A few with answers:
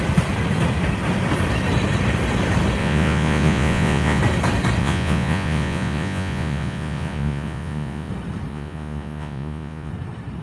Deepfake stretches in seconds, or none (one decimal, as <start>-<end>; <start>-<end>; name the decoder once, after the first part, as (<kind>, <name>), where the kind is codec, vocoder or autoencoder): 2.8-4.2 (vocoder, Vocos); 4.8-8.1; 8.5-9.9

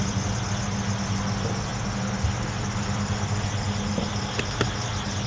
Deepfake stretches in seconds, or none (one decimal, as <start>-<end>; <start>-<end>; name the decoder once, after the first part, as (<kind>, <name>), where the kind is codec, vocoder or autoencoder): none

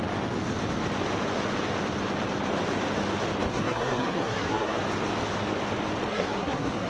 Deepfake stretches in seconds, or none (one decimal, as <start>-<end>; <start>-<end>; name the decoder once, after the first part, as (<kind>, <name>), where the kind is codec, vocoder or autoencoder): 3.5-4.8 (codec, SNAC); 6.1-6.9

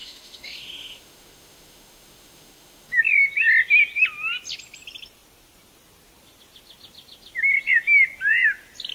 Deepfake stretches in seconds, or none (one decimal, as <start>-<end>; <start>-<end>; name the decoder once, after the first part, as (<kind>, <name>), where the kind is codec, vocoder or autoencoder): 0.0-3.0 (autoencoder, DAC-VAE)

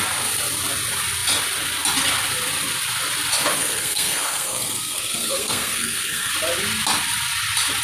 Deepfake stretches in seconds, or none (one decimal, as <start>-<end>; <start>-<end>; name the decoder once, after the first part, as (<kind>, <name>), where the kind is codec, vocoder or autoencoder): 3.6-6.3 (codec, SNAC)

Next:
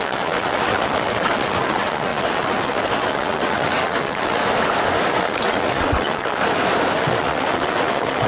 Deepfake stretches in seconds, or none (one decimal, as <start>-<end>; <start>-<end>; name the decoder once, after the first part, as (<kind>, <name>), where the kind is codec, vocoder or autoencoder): 0.0-4.4 (vocoder, WaveNeXt); 5.1-6.4; 7.0-8.3